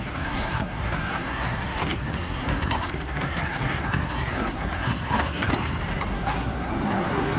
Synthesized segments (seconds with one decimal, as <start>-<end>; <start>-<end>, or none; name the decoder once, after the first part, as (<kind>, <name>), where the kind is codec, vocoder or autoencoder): 0.0-5.5 (codec, SNAC); 6.1-7.4